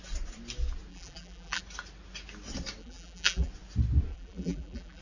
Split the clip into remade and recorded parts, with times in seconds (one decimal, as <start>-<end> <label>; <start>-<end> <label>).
0.0-0.9 recorded; 0.9-1.6 remade; 1.6-2.8 recorded; 2.8-3.5 remade; 3.5-4.1 recorded; 4.1-5.0 remade